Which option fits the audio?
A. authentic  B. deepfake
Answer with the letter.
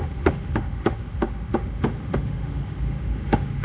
B